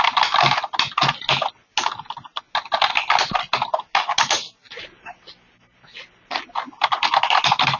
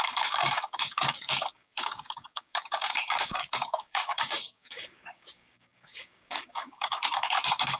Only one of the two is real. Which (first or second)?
first